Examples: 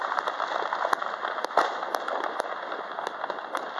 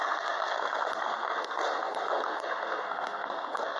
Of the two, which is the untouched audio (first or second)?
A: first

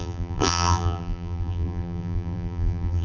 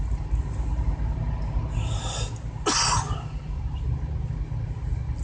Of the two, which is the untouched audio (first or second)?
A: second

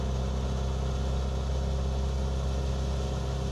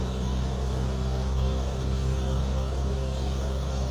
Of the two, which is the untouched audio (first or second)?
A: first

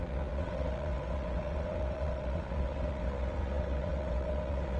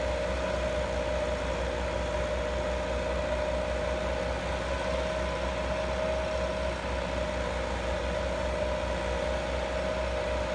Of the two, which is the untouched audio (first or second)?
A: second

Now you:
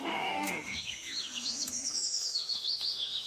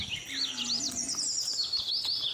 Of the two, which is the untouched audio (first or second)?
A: second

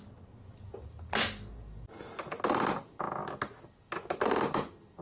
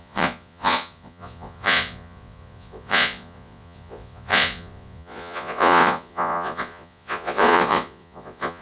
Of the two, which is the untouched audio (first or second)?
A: first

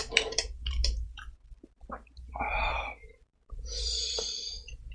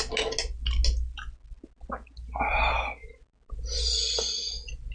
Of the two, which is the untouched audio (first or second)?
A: second